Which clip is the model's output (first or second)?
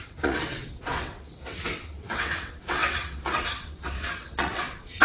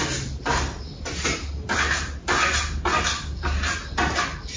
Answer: first